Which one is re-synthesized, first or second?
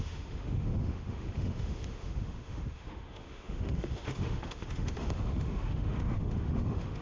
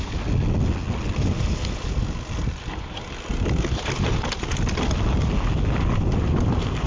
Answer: first